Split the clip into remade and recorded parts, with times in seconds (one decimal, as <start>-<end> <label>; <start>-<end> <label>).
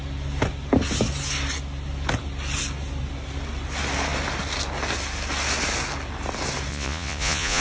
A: 0.0-6.7 recorded; 6.7-7.6 remade